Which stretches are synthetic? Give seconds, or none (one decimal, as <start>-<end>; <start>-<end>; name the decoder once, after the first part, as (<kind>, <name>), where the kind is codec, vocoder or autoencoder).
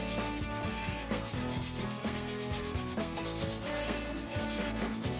0.7-1.3 (codec, SNAC); 2.0-5.2